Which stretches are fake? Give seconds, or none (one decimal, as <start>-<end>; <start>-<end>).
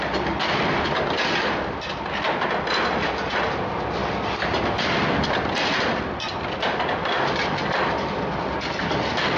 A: none